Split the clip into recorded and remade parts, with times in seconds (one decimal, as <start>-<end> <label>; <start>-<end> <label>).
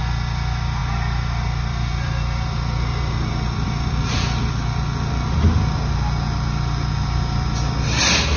0.0-8.4 recorded